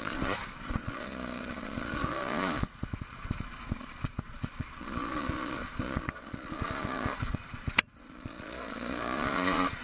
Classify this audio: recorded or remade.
remade